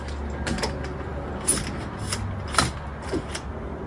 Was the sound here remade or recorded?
recorded